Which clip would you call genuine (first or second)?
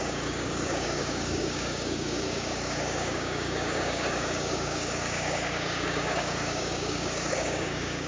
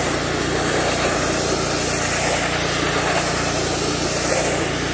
second